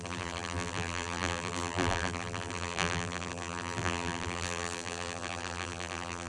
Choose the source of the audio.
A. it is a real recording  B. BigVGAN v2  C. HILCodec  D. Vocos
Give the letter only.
B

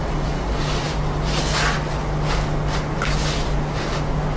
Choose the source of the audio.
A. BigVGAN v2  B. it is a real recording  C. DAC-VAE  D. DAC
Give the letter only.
B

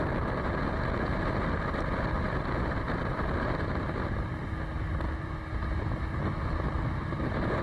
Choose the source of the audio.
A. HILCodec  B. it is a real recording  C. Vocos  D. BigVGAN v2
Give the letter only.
B